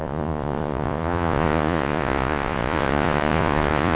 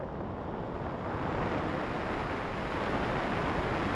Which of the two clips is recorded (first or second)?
second